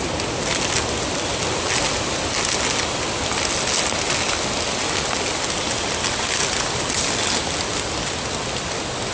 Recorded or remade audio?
recorded